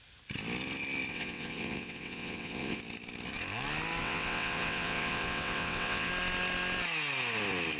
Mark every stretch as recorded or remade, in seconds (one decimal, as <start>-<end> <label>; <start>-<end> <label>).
0.0-1.1 recorded; 1.1-2.8 remade; 2.8-4.0 recorded; 4.0-6.1 remade; 6.1-7.8 recorded